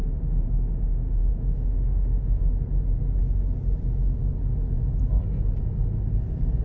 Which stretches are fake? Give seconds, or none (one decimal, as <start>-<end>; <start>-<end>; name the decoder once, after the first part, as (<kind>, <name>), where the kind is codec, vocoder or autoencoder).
0.0-2.5 (autoencoder, DAC-VAE)